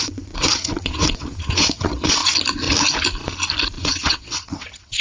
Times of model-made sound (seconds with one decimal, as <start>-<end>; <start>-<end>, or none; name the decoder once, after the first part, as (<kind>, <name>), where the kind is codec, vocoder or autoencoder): 0.0-2.2 (vocoder, WaveNeXt); 3.8-5.0